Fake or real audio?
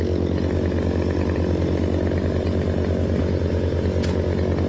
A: real